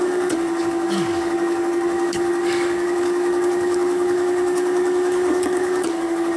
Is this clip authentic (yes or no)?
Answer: no